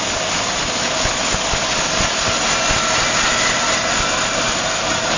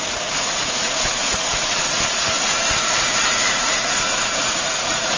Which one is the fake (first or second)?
second